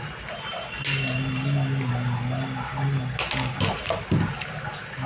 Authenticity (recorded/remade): recorded